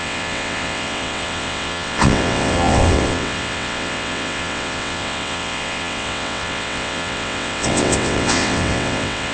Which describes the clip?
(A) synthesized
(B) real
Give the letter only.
A